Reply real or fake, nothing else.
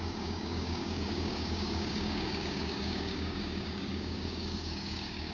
fake